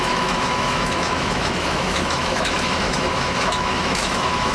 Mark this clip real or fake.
fake